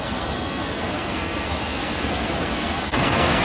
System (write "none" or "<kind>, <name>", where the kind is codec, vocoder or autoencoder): codec, SNAC